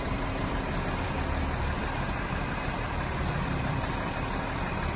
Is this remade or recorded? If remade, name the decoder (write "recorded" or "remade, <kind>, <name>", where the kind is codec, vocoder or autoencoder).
remade, vocoder, BigVGAN v2